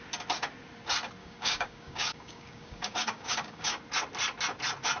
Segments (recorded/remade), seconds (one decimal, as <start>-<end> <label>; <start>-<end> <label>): 0.0-1.2 recorded; 1.2-3.8 remade; 3.8-5.0 recorded